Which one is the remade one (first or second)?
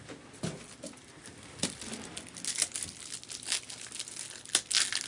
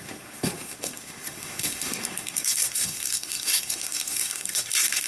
second